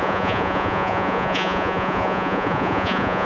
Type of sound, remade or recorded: remade